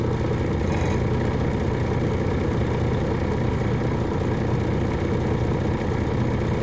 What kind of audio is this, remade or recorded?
recorded